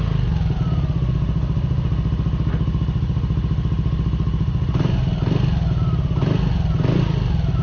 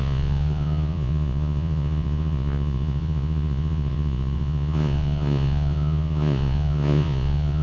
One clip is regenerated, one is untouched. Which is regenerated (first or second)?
second